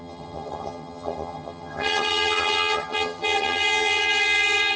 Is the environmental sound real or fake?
fake